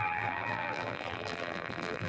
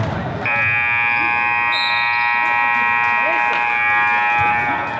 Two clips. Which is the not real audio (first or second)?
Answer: first